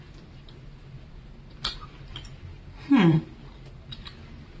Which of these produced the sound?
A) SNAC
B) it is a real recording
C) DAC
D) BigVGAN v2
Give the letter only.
B